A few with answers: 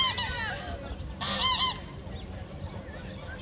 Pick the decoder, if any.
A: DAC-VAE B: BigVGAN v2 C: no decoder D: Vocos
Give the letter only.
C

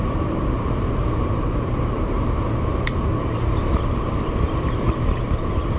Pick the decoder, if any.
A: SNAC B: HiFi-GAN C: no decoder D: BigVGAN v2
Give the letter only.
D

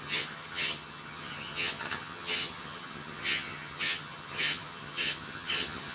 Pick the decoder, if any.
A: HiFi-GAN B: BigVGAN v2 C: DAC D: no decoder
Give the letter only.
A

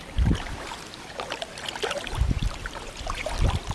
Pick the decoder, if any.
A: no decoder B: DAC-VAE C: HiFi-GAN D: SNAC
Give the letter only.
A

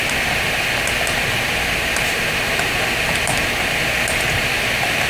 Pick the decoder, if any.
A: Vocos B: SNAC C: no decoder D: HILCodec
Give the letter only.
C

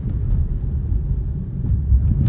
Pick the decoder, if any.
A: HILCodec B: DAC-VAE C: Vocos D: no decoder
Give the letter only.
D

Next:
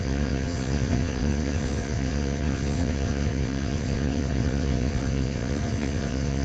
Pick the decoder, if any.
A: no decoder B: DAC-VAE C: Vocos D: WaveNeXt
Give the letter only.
D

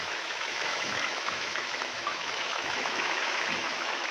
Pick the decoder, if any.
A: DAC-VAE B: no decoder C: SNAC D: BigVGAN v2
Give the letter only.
A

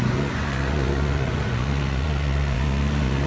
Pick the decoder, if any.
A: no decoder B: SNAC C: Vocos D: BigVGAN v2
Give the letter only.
C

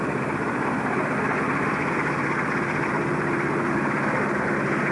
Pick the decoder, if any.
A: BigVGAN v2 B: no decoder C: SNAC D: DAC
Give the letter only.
B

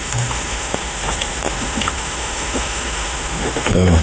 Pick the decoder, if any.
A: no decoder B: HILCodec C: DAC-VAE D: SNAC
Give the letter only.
C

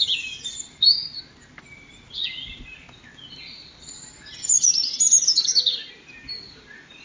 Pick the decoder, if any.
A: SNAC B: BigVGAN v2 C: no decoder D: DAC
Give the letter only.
C